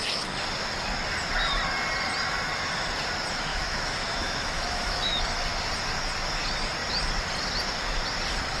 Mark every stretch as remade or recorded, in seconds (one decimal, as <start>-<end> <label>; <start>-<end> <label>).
0.0-3.5 recorded; 3.5-5.2 remade; 5.2-8.6 recorded